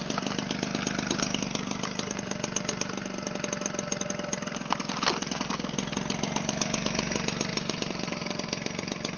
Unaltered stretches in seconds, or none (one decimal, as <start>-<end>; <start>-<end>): 0.0-7.5; 8.2-9.2